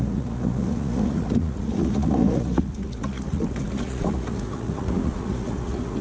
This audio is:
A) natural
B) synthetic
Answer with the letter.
B